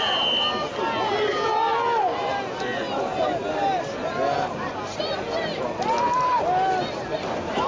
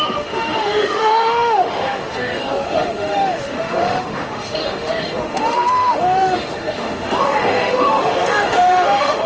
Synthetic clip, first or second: second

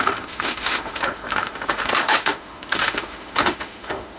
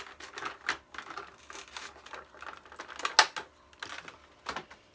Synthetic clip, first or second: first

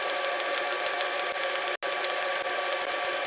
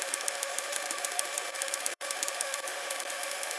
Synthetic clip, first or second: second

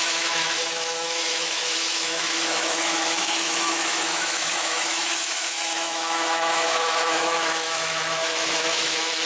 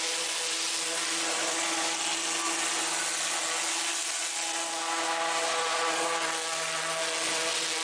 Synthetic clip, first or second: first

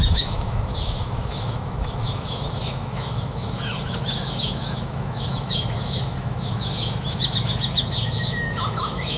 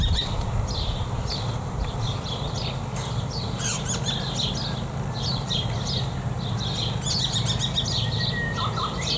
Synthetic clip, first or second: first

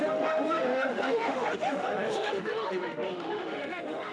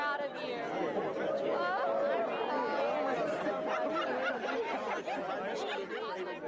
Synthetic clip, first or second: first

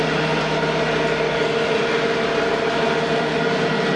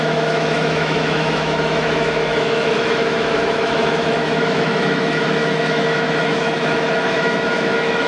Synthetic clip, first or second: second